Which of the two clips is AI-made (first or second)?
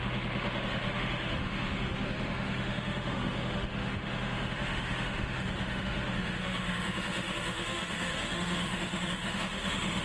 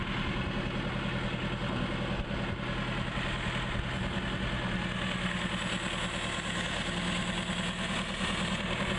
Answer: first